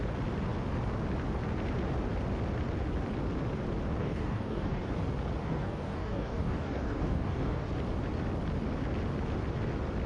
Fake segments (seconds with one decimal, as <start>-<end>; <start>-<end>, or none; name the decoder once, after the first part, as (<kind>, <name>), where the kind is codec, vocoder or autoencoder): 4.0-4.9 (codec, DAC); 5.4-7.7